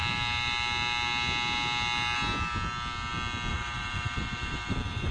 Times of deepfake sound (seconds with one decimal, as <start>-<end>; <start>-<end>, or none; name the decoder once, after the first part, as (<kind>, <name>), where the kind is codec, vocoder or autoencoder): 3.5-5.1 (vocoder, BigVGAN v2)